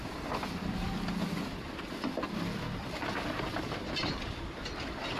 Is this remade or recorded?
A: remade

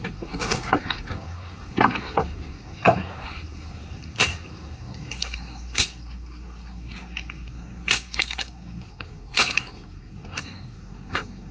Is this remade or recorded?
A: remade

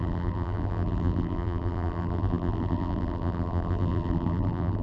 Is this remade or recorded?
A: remade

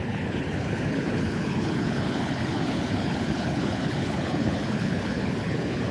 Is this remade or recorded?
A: remade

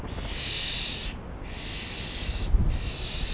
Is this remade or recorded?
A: recorded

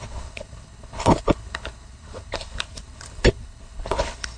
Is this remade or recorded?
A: remade